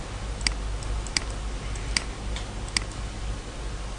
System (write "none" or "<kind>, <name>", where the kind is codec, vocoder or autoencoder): none